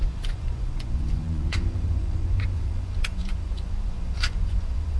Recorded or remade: remade